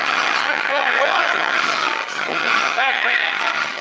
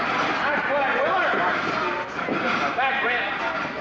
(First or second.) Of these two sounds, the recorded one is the second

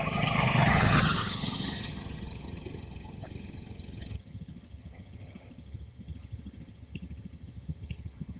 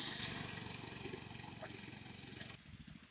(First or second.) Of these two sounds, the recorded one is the second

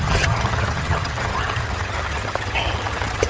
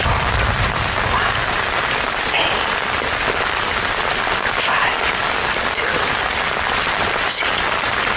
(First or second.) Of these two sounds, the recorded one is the second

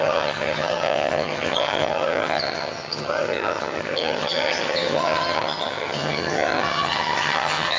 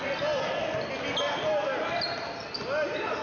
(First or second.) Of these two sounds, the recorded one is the second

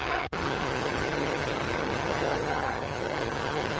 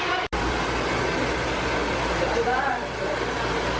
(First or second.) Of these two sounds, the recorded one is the second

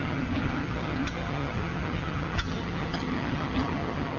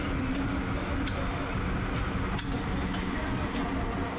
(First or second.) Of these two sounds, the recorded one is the second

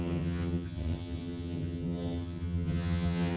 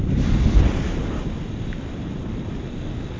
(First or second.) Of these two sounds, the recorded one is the second